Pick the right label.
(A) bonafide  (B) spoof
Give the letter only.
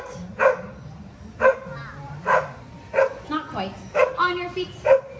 A